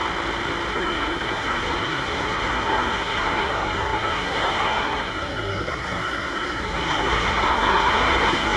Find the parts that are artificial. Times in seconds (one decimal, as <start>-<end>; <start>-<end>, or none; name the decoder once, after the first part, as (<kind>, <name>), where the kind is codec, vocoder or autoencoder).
0.7-8.6 (codec, SNAC)

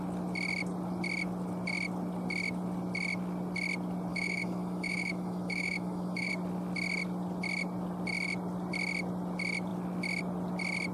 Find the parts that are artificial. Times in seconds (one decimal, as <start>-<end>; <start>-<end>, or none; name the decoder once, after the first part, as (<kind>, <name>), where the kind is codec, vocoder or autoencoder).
4.1-6.3 (autoencoder, DAC-VAE)

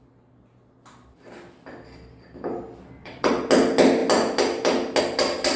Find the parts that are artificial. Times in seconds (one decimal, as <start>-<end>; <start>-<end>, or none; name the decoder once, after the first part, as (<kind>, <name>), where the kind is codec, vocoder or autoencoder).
3.0-3.5 (vocoder, WaveNeXt)